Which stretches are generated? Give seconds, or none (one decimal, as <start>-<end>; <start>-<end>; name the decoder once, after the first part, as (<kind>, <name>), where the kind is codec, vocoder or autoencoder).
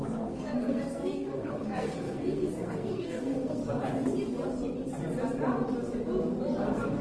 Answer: 0.0-3.6 (codec, SNAC); 6.6-7.0